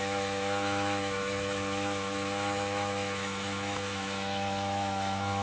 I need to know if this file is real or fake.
fake